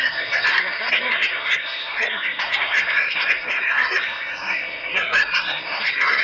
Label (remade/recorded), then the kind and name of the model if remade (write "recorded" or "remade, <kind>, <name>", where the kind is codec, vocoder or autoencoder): remade, codec, SNAC